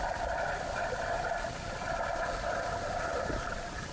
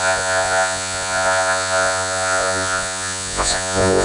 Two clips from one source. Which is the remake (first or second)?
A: second